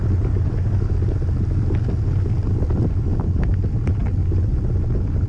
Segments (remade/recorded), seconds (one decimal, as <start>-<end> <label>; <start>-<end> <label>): 0.0-5.3 recorded